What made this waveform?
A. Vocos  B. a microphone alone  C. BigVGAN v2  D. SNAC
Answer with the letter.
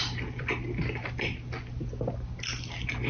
B